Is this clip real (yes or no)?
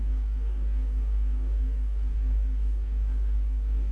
no